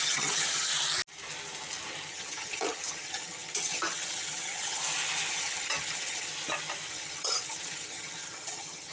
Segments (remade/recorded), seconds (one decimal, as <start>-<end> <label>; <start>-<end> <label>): 0.0-0.7 remade; 0.7-2.1 recorded; 2.1-4.8 remade; 4.8-5.3 recorded; 5.3-6.3 remade; 6.3-6.9 recorded; 6.9-8.9 remade